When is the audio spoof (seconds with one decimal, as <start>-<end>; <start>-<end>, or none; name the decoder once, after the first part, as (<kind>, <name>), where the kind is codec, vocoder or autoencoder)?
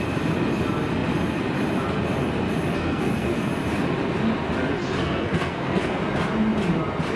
2.7-3.5 (codec, SNAC); 4.8-6.0